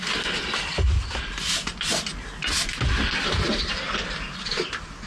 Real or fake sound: real